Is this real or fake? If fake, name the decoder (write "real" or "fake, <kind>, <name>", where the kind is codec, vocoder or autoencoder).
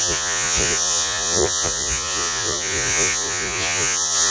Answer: fake, vocoder, Vocos